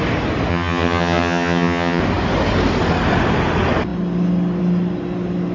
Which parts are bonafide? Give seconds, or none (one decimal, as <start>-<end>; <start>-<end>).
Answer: 0.0-0.5; 2.0-5.5